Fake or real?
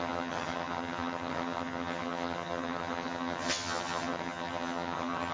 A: fake